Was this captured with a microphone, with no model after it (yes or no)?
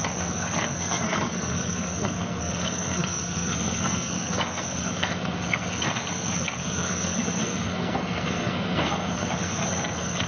no